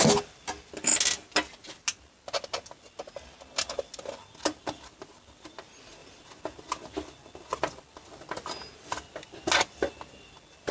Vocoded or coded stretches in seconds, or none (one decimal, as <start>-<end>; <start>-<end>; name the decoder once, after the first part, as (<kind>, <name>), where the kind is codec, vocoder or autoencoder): none